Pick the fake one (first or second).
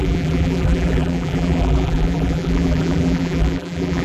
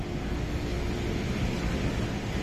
first